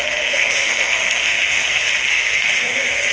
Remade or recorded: remade